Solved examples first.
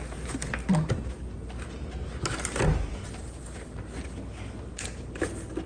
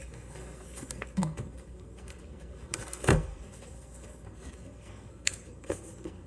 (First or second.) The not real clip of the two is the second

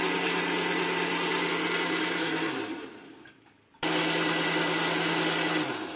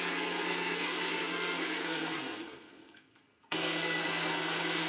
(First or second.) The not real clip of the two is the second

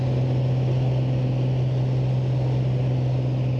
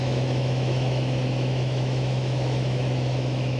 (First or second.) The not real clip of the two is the second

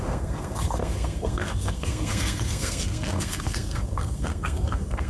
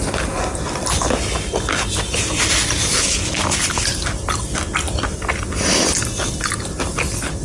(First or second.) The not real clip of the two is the first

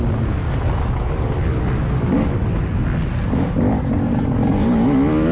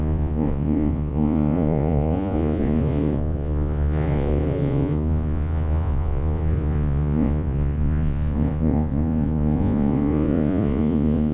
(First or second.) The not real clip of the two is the second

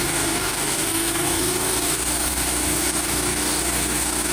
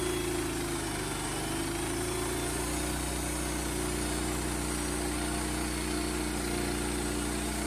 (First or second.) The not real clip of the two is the first